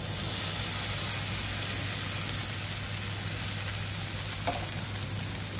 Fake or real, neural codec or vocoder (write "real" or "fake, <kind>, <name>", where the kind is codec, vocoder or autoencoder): real